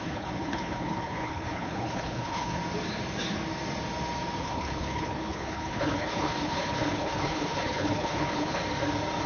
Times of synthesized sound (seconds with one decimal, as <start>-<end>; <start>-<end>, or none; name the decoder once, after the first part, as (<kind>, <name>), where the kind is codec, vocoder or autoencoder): 0.0-2.6 (codec, HILCodec); 4.4-8.6